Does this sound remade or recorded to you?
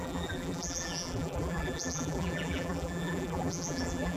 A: remade